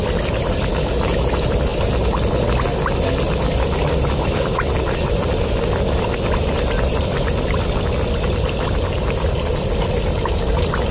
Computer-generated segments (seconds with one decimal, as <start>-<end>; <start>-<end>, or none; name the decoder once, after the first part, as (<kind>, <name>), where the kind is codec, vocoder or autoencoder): none